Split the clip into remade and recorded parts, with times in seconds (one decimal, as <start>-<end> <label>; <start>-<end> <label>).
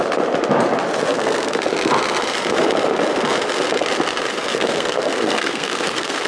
0.0-1.1 recorded; 1.1-1.6 remade; 1.6-4.5 recorded; 4.5-6.3 remade